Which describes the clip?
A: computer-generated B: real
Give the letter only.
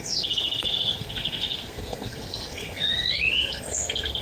A